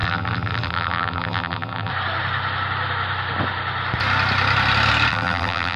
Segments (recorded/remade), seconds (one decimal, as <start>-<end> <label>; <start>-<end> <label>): 0.0-1.9 remade; 1.9-5.1 recorded; 5.1-5.8 remade